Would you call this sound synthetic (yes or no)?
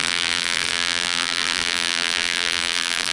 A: yes